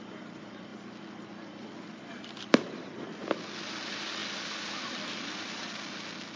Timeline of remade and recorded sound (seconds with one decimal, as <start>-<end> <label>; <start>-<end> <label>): 0.0-0.7 remade; 0.7-1.3 recorded; 1.3-3.1 remade; 3.1-3.6 recorded; 3.6-6.4 remade